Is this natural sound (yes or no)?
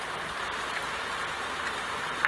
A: yes